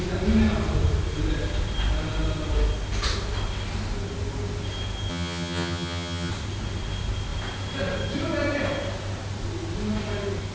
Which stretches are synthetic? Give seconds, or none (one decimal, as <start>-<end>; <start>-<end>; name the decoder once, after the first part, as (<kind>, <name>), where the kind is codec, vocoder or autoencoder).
5.1-6.3 (vocoder, HiFi-GAN)